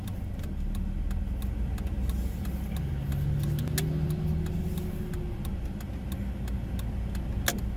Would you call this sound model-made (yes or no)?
no